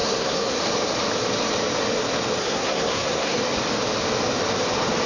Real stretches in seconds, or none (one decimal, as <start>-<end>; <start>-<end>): 0.6-2.4; 3.4-5.1